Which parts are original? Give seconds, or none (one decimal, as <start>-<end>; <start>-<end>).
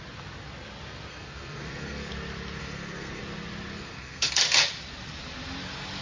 0.0-1.1; 2.1-2.6; 3.2-3.7; 4.3-6.0